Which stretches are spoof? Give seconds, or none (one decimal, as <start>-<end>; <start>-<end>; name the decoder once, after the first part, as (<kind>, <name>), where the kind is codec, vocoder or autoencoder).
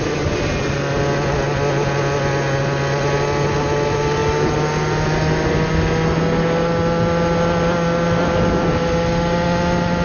none